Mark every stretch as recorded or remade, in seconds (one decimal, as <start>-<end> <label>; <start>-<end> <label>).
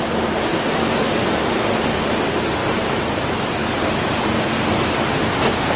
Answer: 0.0-0.5 recorded; 0.5-2.1 remade; 2.1-2.6 recorded; 2.6-4.3 remade; 4.3-5.8 recorded